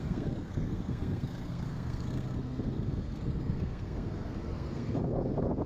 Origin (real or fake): fake